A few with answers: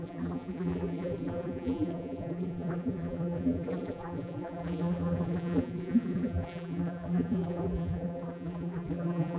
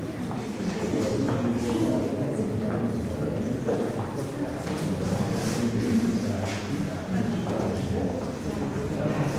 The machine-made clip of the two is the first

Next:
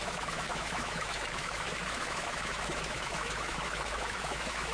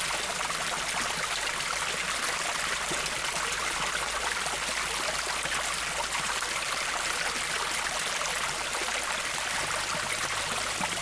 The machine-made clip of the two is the first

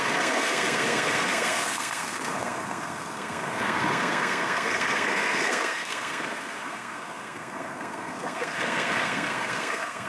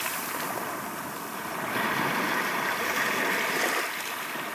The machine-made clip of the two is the first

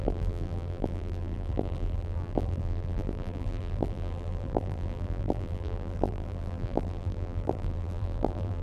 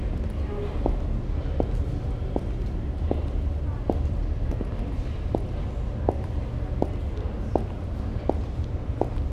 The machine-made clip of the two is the first